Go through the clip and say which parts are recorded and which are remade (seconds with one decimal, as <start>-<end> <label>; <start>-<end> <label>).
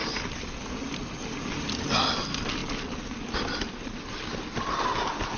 0.0-5.4 recorded